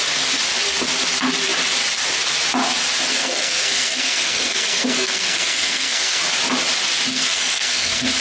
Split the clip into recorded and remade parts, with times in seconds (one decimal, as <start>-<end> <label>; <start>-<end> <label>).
0.0-3.1 recorded; 3.1-6.2 remade; 6.2-7.1 recorded; 7.1-8.2 remade